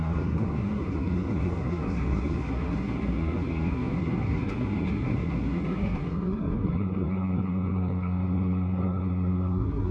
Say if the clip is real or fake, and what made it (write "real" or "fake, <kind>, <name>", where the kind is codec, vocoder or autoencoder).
fake, codec, SNAC